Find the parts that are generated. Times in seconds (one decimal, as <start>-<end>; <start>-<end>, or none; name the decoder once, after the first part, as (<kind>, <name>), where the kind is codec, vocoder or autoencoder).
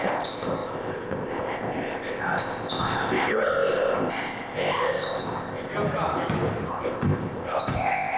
0.0-5.7 (codec, ZipCodec); 6.7-8.2